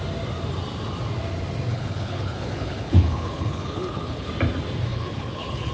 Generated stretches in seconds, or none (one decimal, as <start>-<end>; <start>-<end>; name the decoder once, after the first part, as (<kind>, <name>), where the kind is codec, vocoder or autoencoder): 1.7-4.3 (codec, HILCodec); 4.9-5.7